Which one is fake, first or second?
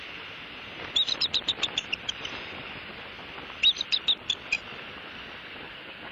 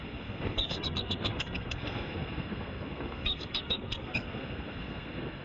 second